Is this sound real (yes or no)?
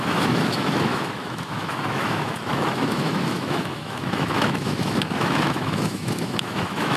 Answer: no